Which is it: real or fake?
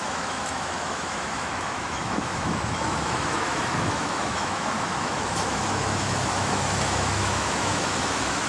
fake